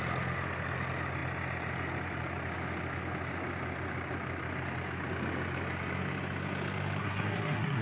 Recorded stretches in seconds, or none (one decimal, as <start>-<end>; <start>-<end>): 0.0-7.0